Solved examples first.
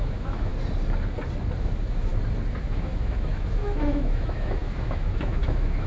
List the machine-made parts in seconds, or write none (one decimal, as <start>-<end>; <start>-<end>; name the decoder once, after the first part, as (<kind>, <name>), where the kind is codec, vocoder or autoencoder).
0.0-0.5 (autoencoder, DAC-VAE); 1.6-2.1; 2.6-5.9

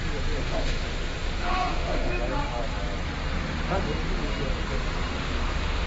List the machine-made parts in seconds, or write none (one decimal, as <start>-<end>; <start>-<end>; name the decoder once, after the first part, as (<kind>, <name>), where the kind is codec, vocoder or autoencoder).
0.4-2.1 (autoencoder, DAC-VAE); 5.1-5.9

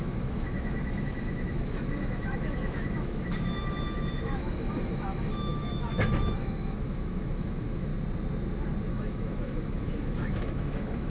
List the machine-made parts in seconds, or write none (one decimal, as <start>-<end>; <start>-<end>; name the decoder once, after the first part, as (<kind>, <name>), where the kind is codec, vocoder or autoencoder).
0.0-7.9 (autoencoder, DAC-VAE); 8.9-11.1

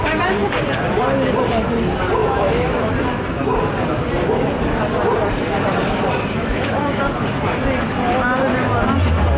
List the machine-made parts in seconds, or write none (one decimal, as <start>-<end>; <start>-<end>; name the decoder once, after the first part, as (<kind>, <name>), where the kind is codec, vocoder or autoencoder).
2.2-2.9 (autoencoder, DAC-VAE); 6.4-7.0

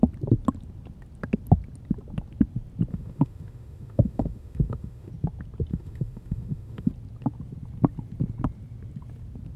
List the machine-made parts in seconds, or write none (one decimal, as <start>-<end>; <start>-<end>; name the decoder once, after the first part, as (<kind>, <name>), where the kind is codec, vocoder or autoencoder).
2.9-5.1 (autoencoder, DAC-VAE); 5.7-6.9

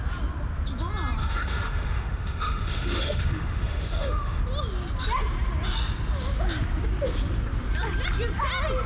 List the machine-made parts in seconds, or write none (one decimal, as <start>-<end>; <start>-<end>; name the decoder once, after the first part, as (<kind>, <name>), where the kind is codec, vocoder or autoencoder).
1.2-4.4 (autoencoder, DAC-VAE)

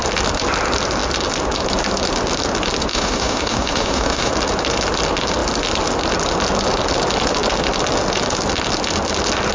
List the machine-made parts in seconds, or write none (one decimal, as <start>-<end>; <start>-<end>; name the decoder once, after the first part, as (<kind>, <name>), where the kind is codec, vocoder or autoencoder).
2.9-4.3 (autoencoder, DAC-VAE)

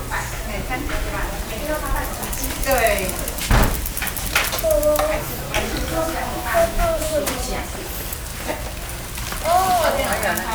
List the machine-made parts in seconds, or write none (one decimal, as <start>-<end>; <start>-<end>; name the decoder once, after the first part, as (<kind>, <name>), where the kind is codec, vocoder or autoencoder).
5.9-7.2 (autoencoder, DAC-VAE)